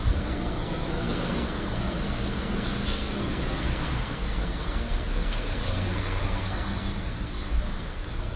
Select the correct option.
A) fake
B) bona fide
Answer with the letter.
A